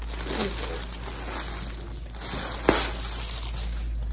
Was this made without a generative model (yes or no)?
yes